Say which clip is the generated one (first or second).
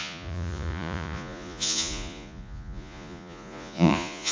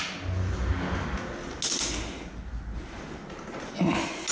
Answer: first